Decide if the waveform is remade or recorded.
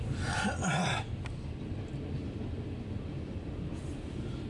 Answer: recorded